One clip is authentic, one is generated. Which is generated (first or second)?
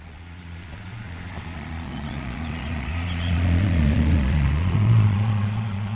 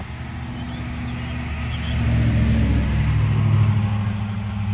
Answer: first